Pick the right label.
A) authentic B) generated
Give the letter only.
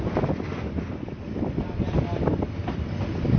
A